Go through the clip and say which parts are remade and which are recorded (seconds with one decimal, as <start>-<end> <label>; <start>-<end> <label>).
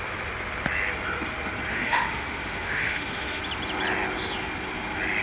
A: 0.0-1.7 recorded; 1.7-3.4 remade; 3.4-5.2 recorded